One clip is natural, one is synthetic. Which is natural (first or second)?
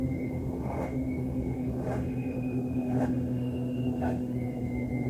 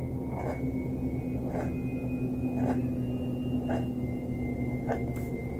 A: second